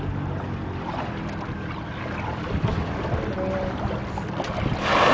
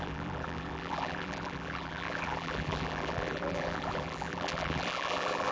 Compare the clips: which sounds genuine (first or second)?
first